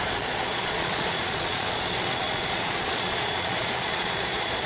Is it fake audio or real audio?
fake